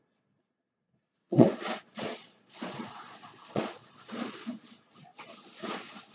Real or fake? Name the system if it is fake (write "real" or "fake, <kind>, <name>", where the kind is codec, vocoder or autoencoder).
fake, vocoder, Vocos